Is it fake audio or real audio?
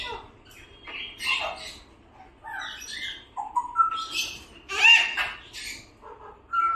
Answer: real